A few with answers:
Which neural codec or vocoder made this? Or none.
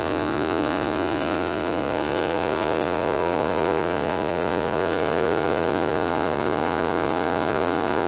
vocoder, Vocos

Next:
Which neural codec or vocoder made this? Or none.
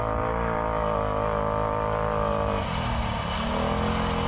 none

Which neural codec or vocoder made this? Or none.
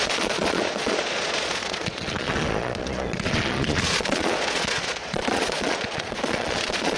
vocoder, Vocos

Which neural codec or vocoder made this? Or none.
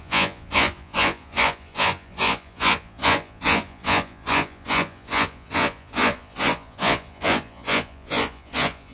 vocoder, Vocos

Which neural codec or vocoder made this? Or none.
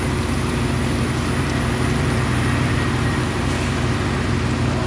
none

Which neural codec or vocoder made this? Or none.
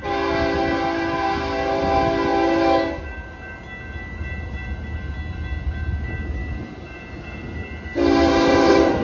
none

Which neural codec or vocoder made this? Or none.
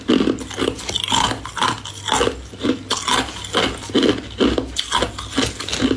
none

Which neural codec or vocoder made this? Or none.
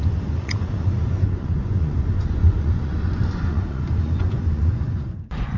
vocoder, Vocos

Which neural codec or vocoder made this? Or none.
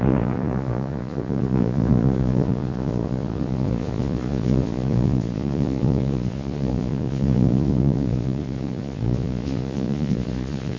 vocoder, Vocos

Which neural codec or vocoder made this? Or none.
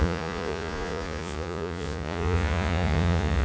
vocoder, Vocos